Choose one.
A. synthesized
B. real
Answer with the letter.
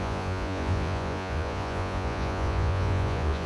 A